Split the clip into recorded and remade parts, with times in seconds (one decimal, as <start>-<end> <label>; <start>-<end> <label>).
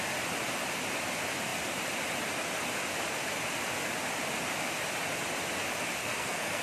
0.0-6.0 recorded; 6.0-6.6 remade